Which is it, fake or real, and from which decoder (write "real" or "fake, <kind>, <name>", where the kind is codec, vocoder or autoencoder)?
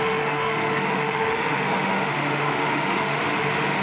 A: fake, autoencoder, DAC-VAE